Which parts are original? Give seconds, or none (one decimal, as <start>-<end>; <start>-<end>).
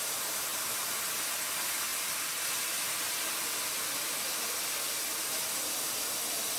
0.0-6.6